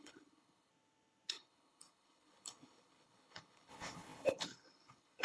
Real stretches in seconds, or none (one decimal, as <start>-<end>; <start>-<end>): 0.7-1.3